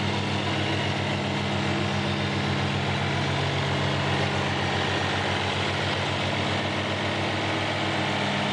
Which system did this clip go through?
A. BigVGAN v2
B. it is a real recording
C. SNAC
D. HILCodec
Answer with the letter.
B